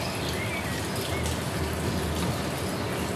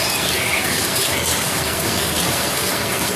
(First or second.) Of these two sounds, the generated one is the second